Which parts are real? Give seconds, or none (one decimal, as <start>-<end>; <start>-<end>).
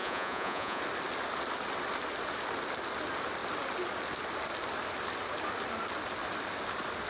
0.8-7.1